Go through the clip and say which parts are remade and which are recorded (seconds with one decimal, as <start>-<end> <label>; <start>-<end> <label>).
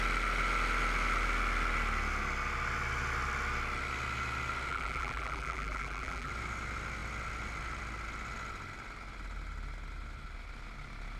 0.0-4.7 recorded; 4.7-6.3 remade; 6.3-11.2 recorded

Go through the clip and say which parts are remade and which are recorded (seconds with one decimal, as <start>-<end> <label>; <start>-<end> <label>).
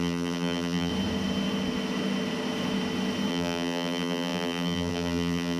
0.0-0.9 remade; 0.9-3.3 recorded; 3.3-5.6 remade